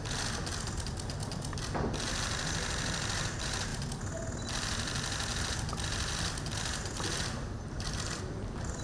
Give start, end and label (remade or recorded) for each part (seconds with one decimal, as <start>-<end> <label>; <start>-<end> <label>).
0.0-8.8 recorded

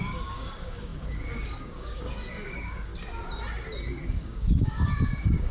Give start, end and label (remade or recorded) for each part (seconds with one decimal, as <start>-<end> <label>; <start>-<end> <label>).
0.0-2.9 remade; 2.9-3.9 recorded; 3.9-5.5 remade

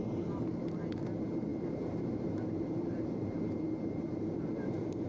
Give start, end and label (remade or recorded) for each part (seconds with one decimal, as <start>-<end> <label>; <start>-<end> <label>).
0.0-5.1 remade

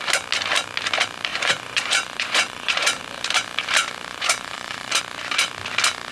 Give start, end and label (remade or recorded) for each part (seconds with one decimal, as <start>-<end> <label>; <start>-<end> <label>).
0.0-1.3 recorded; 1.3-3.0 remade; 3.0-4.1 recorded; 4.1-5.0 remade; 5.0-6.1 recorded